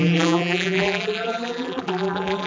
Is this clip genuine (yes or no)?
no